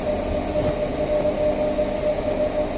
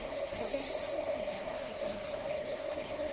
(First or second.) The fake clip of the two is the second